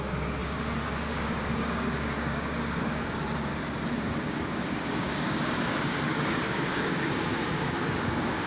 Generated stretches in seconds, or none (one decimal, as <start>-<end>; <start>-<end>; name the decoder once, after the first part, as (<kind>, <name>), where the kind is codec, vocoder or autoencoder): 0.0-3.5 (codec, DAC); 4.0-8.5